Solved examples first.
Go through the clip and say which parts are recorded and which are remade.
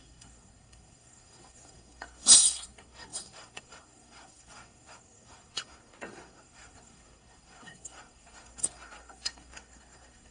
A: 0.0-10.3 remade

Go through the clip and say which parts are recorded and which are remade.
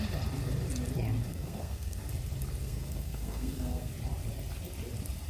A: 0.0-1.3 recorded; 1.3-2.0 remade; 2.0-2.6 recorded; 2.6-3.9 remade; 3.9-5.3 recorded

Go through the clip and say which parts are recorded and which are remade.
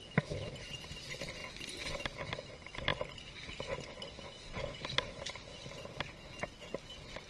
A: 0.0-7.3 recorded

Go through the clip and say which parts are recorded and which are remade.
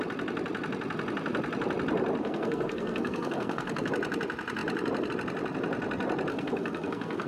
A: 0.0-2.2 recorded; 2.2-3.9 remade; 3.9-6.3 recorded; 6.3-7.3 remade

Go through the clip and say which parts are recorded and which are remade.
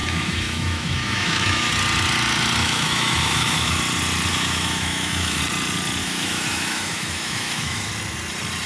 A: 0.0-1.7 remade; 1.7-2.6 recorded; 2.6-3.8 remade; 3.8-4.3 recorded; 4.3-5.4 remade; 5.4-6.0 recorded; 6.0-7.9 remade; 7.9-8.7 recorded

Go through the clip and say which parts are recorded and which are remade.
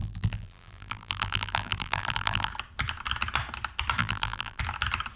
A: 0.0-2.5 remade; 2.5-4.0 recorded; 4.0-4.6 remade; 4.6-5.2 recorded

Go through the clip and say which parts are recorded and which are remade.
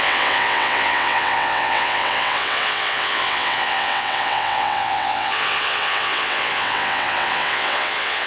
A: 0.0-8.3 remade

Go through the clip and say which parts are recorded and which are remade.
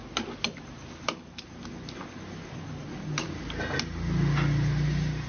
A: 0.0-5.3 recorded